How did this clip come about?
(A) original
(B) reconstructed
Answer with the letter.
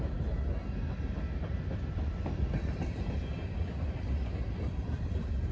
A